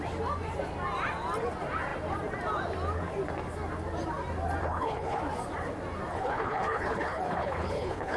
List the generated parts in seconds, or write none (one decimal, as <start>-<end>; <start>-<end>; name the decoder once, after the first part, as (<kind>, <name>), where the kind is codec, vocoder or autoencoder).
4.6-5.2 (codec, HILCodec); 6.1-8.2